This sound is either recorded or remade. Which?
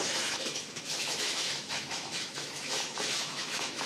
remade